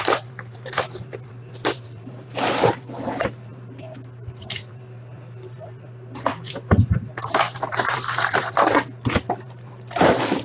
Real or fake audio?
fake